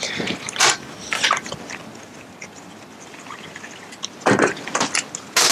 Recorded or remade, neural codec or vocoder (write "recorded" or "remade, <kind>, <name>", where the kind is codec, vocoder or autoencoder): recorded